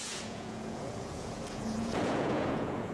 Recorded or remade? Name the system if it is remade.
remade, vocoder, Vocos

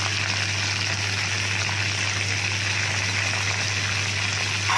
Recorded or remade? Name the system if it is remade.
recorded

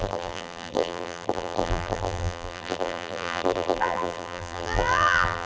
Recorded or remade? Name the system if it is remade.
remade, vocoder, BigVGAN v2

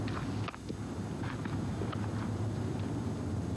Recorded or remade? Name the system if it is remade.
recorded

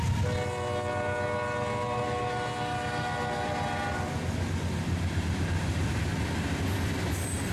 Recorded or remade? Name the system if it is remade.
recorded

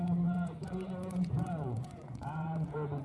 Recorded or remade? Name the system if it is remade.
remade, vocoder, Vocos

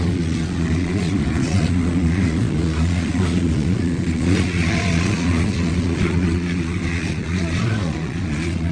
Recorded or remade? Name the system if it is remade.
remade, vocoder, Vocos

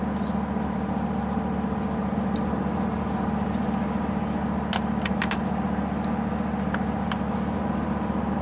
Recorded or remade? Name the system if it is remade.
recorded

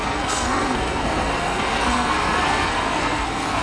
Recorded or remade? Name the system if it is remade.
remade, codec, SNAC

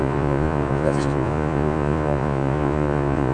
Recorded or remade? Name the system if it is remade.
remade, vocoder, Vocos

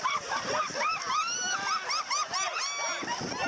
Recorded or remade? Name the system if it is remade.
recorded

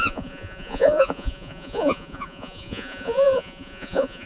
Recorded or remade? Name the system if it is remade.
remade, vocoder, Vocos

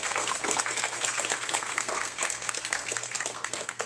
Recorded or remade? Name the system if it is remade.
remade, codec, SNAC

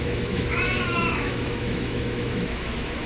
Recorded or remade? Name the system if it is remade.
remade, autoencoder, DAC-VAE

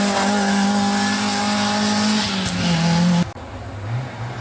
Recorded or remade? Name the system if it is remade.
recorded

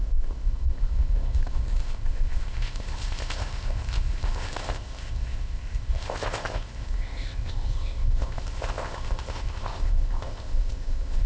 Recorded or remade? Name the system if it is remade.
remade, codec, ZipCodec